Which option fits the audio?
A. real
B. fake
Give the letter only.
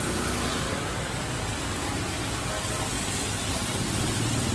A